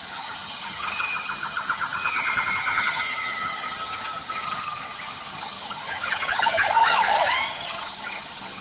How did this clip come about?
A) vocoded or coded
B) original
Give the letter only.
A